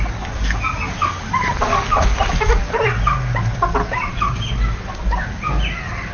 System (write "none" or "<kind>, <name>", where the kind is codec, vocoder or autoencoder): none